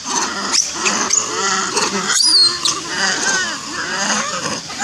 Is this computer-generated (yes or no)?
no